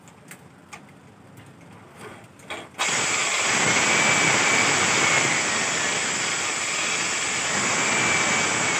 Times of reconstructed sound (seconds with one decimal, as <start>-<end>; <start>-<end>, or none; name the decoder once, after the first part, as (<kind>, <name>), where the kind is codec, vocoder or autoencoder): none